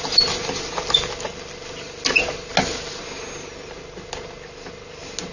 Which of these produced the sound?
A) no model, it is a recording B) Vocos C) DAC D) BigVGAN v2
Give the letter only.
A